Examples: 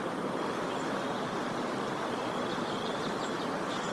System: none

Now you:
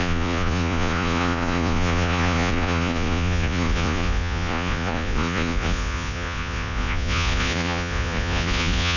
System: vocoder, Vocos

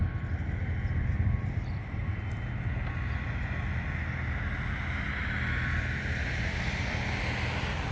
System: none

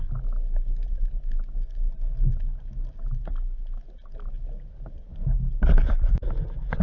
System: none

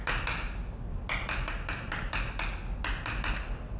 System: none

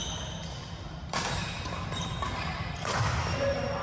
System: none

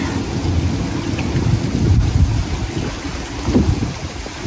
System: none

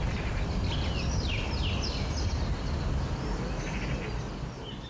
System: none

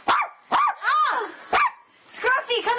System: none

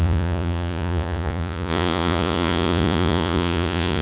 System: vocoder, Vocos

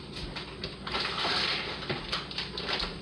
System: none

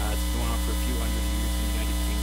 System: none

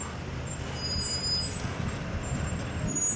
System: none